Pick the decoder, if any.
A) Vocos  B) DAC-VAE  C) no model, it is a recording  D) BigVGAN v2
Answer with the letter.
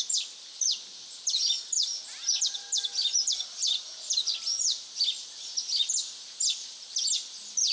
C